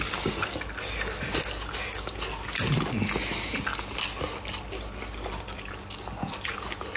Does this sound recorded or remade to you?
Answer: recorded